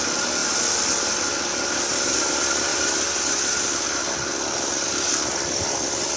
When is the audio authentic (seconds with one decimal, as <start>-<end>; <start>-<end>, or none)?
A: 0.0-6.2